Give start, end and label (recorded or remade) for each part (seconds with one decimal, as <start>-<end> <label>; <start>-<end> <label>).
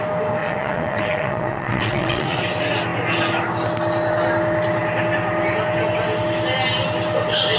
0.0-0.4 recorded; 0.4-2.4 remade; 2.4-7.6 recorded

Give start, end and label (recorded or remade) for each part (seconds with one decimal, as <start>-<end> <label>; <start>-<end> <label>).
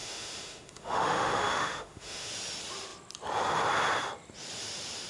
0.0-2.3 remade; 2.3-5.1 recorded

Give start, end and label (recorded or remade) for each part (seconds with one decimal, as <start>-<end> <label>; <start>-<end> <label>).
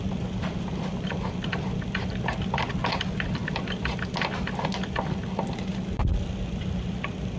0.0-7.4 recorded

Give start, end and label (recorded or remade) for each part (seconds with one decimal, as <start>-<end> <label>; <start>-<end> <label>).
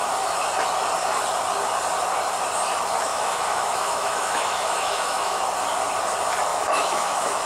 0.0-3.1 recorded; 3.1-5.4 remade; 5.4-6.5 recorded; 6.5-7.5 remade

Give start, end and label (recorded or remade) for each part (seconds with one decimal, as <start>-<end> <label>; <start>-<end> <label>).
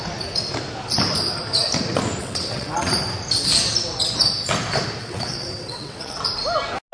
0.0-2.2 recorded; 2.2-2.9 remade; 2.9-5.0 recorded; 5.0-6.2 remade; 6.2-6.9 recorded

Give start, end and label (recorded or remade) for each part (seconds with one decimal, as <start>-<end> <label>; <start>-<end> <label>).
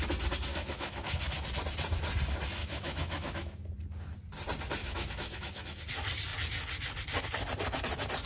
0.0-0.5 recorded; 0.5-1.2 remade; 1.2-2.6 recorded; 2.6-3.7 remade; 3.7-4.8 recorded; 4.8-5.8 remade; 5.8-8.3 recorded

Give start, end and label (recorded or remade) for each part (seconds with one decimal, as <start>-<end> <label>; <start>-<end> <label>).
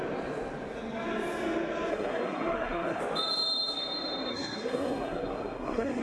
0.0-1.9 recorded; 1.9-3.0 remade; 3.0-4.3 recorded; 4.3-6.0 remade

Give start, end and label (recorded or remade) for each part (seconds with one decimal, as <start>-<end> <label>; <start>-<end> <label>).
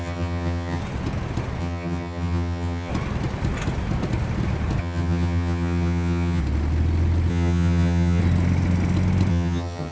0.0-0.8 remade; 0.8-1.6 recorded; 1.6-2.9 remade; 2.9-4.8 recorded; 4.8-6.4 remade; 6.4-7.3 recorded; 7.3-8.2 remade; 8.2-9.3 recorded; 9.3-9.9 remade